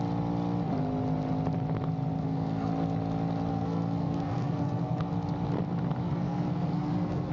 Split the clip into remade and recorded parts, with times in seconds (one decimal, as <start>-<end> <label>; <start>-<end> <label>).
0.0-2.2 recorded; 2.2-2.7 remade; 2.7-3.5 recorded; 3.5-5.1 remade; 5.1-6.0 recorded; 6.0-7.3 remade

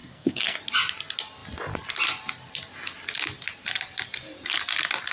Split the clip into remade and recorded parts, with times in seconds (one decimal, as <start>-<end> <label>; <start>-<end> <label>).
0.0-0.6 remade; 0.6-5.1 recorded